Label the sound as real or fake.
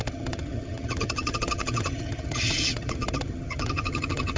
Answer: fake